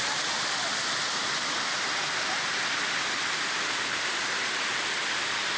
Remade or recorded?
recorded